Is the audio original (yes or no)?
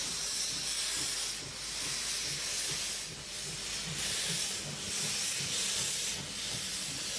yes